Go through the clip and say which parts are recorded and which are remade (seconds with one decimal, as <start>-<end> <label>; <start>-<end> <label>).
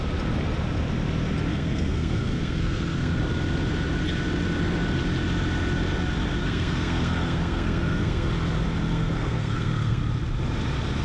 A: 0.0-1.5 recorded; 1.5-3.2 remade; 3.2-6.4 recorded; 6.4-8.3 remade; 8.3-8.9 recorded; 8.9-10.0 remade; 10.0-11.0 recorded